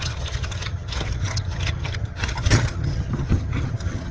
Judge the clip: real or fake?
fake